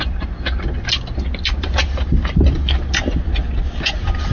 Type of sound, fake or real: real